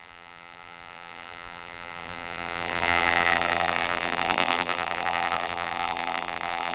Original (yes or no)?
no